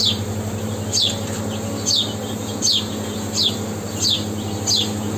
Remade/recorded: recorded